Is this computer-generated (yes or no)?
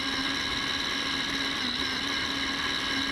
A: no